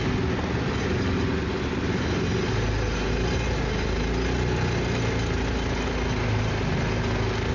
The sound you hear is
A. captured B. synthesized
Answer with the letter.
A